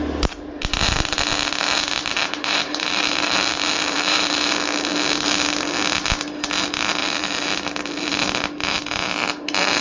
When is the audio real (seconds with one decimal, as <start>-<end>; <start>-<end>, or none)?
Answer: 0.0-2.0; 4.5-7.0; 8.1-9.8